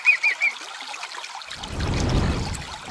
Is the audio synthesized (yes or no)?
yes